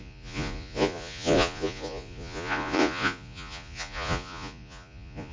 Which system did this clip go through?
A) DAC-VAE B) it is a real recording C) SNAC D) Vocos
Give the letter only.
D